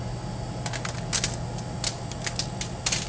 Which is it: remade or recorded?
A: recorded